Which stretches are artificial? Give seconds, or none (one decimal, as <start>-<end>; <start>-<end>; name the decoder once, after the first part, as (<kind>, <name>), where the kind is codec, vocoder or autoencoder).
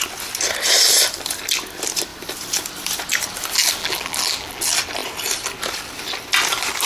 3.8-4.6 (vocoder, BigVGAN v2)